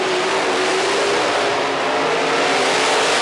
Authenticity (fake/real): real